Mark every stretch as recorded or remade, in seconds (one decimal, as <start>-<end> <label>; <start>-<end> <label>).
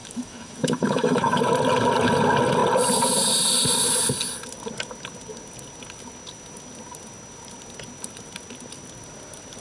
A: 0.0-1.4 remade; 1.4-9.6 recorded